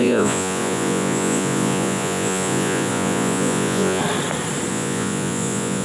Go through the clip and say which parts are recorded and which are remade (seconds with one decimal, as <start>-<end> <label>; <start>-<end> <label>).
0.0-4.0 remade; 4.0-4.7 recorded; 4.7-5.8 remade